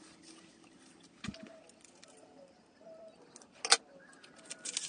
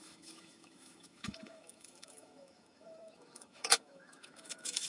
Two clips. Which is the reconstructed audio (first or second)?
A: second